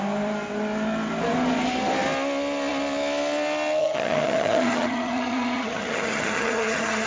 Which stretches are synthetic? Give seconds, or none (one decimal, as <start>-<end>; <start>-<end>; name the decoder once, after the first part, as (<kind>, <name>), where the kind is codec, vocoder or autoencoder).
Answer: 3.8-7.1 (vocoder, HiFi-GAN)